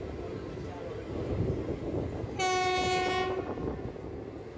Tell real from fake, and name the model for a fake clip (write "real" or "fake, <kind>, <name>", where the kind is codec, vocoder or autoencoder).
real